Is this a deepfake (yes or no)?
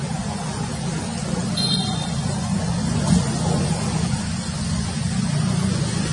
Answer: yes